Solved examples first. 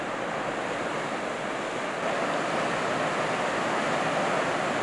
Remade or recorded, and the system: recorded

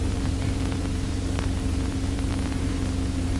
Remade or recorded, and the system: remade, vocoder, BigVGAN v2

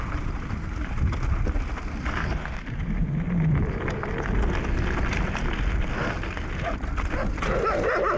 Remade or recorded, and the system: recorded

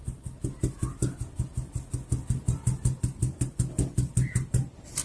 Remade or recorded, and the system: recorded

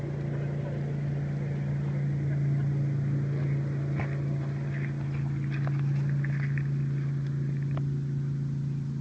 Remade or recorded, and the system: recorded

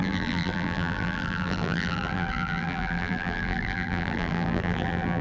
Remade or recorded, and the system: remade, vocoder, BigVGAN v2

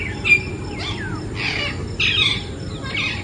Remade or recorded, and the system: recorded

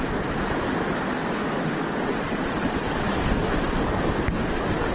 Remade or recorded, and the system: recorded